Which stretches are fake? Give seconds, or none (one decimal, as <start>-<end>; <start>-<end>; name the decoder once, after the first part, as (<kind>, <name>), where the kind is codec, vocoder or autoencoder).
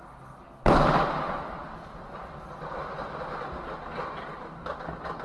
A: none